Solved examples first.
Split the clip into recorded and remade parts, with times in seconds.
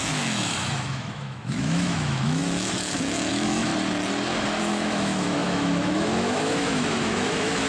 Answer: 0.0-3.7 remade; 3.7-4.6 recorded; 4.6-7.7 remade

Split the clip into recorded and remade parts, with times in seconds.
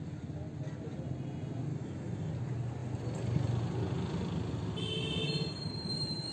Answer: 0.0-1.7 recorded; 1.7-2.3 remade; 2.3-6.3 recorded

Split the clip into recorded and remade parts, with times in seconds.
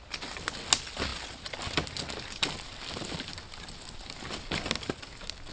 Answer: 0.0-5.5 recorded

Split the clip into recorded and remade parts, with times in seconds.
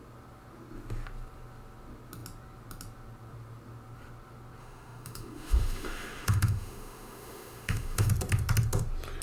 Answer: 0.0-4.6 recorded; 4.6-8.1 remade; 8.1-9.2 recorded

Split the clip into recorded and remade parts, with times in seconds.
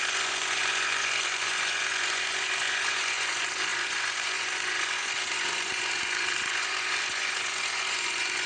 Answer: 0.0-8.5 remade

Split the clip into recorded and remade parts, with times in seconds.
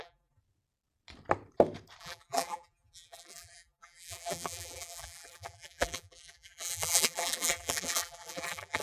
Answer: 0.0-0.4 remade; 0.4-2.0 recorded; 2.0-8.8 remade